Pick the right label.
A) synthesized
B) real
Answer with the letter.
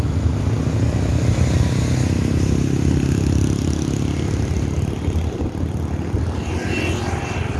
B